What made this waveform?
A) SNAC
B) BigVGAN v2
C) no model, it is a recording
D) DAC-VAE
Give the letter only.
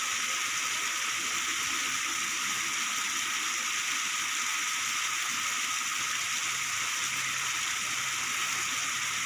C